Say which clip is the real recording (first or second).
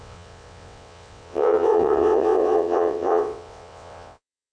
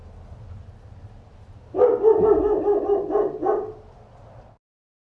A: second